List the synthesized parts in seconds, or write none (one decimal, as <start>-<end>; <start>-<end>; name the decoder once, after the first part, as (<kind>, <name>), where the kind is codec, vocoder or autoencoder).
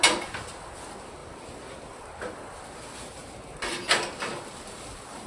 none